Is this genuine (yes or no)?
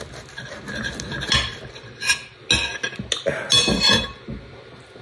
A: yes